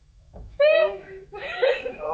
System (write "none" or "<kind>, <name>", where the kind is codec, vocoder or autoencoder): autoencoder, DAC-VAE